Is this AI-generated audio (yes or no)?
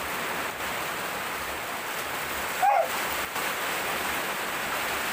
no